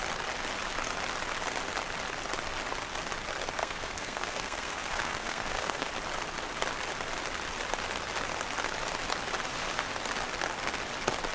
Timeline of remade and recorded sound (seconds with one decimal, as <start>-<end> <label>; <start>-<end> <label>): 0.0-3.6 recorded; 3.6-5.9 remade; 5.9-11.3 recorded